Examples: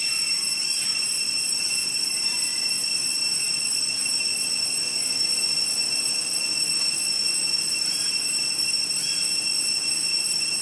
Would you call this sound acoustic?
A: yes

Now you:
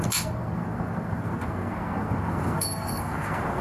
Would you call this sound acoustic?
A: no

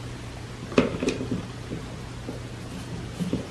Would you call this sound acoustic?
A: yes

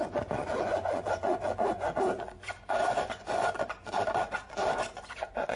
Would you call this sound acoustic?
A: no